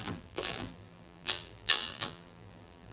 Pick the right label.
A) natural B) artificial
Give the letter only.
B